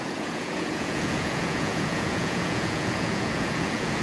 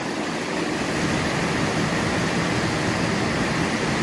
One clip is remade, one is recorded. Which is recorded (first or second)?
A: second